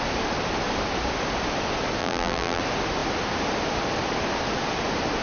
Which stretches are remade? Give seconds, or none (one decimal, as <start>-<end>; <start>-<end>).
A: 2.0-2.6